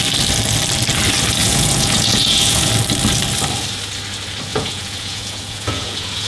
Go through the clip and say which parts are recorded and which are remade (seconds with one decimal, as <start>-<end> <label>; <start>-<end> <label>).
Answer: 0.0-1.4 recorded; 1.4-2.7 remade; 2.7-4.5 recorded; 4.5-6.3 remade